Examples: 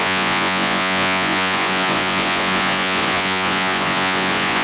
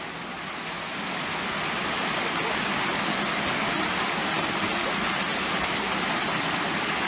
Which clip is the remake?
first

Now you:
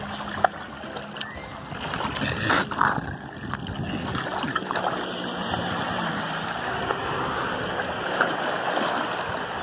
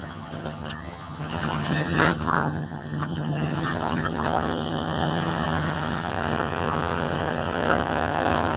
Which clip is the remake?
second